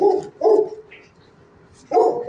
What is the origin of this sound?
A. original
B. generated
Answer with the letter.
A